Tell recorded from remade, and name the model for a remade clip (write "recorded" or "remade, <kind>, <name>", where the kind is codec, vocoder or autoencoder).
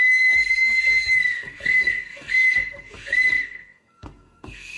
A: remade, codec, SNAC